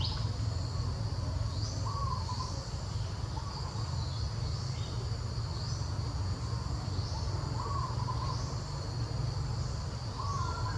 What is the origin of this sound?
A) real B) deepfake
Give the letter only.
A